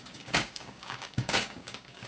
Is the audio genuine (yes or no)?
no